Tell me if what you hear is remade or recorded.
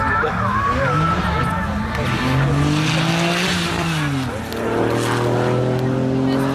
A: recorded